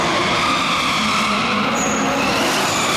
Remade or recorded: recorded